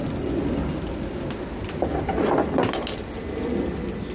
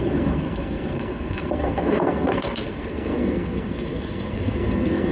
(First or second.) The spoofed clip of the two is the second